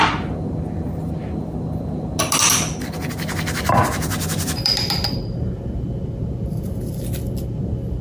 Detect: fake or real real